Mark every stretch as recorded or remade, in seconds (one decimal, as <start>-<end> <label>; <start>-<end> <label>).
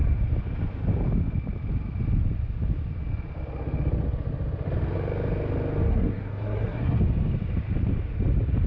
0.0-5.9 recorded; 5.9-7.0 remade; 7.0-8.7 recorded